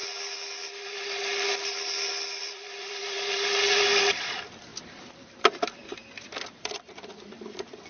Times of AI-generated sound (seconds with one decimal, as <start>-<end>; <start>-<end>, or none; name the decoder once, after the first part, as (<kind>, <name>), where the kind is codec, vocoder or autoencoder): 0.8-1.3 (vocoder, BigVGAN v2); 2.4-4.7; 5.4-6.0; 6.6-7.9